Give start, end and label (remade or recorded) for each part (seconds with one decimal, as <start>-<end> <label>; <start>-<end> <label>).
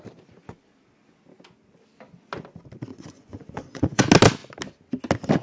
0.0-2.9 recorded; 2.9-4.0 remade; 4.0-5.4 recorded